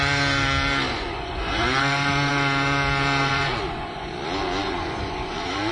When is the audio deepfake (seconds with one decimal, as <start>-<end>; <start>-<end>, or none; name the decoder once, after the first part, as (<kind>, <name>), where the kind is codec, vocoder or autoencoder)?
0.9-2.3 (vocoder, Vocos); 3.2-4.1; 4.6-5.7